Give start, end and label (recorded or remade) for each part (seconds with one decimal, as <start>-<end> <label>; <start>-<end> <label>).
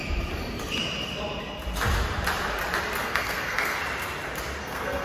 0.0-3.0 recorded; 3.0-3.8 remade; 3.8-4.6 recorded; 4.6-5.0 remade